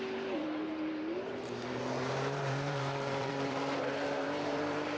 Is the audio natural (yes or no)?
no